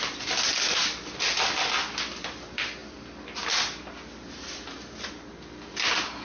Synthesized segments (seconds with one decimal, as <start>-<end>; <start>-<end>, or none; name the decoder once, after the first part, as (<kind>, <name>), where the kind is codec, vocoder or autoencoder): none